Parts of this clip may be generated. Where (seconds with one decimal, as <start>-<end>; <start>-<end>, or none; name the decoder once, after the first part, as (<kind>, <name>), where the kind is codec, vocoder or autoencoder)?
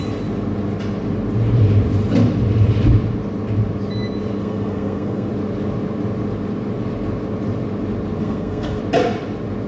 4.4-5.3 (codec, SNAC); 8.2-8.8